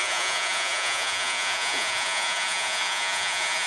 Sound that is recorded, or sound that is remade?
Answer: remade